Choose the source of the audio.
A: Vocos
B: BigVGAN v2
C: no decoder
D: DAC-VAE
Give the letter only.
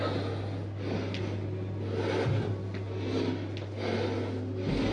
C